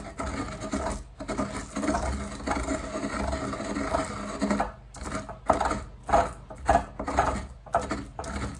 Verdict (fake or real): real